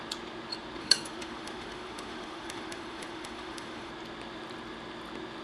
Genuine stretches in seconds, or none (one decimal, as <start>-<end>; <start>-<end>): 0.0-0.8; 3.9-5.4